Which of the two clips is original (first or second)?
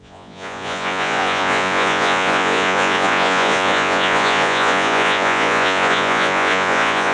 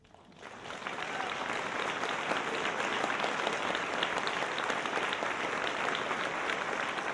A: second